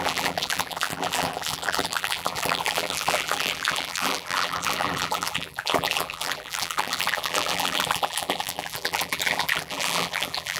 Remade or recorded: remade